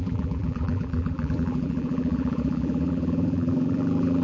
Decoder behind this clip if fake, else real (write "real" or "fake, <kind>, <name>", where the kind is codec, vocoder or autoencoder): fake, vocoder, BigVGAN v2